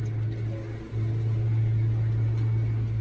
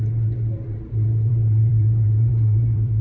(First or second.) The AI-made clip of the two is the second